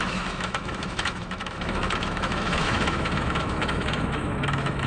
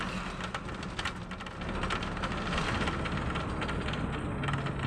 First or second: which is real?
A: second